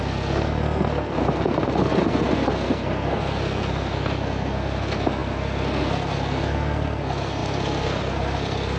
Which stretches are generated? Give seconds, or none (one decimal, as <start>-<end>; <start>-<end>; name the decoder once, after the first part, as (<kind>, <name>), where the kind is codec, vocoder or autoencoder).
0.0-8.8 (codec, SNAC)